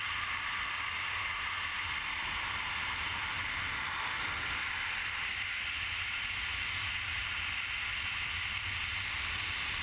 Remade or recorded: recorded